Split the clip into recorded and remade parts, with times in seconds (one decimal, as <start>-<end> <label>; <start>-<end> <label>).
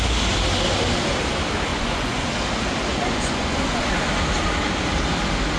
0.0-1.7 recorded; 1.7-2.3 remade; 2.3-2.9 recorded; 2.9-3.9 remade; 3.9-5.6 recorded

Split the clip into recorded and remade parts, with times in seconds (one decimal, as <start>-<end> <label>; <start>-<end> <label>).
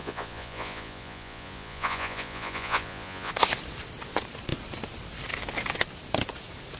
0.0-3.3 remade; 3.3-6.8 recorded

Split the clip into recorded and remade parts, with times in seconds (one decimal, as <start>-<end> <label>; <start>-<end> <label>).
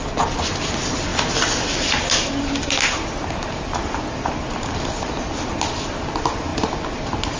0.0-7.4 recorded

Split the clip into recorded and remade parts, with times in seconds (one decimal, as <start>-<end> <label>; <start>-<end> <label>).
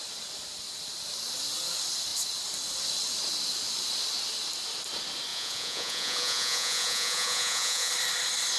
0.0-5.3 recorded; 5.3-7.9 remade; 7.9-8.6 recorded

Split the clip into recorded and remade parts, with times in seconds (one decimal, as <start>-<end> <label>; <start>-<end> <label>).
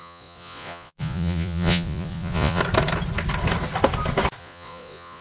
0.0-2.6 remade; 2.6-4.4 recorded; 4.4-5.2 remade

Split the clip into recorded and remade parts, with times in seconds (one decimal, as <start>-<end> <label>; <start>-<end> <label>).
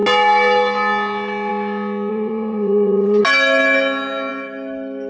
0.0-2.1 recorded; 2.1-3.2 remade; 3.2-5.1 recorded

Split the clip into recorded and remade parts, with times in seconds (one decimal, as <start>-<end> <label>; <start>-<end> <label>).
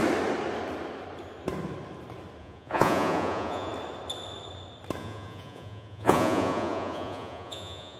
0.0-2.4 recorded; 2.4-3.7 remade; 3.7-5.0 recorded; 5.0-8.0 remade